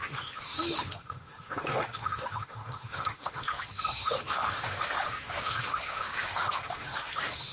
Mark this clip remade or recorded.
remade